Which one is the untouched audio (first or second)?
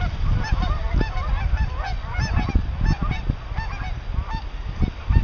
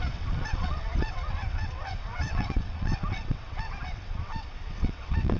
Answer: first